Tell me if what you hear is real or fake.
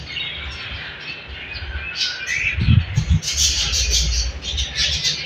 real